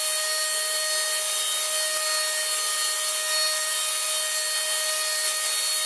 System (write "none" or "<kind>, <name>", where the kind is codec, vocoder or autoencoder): none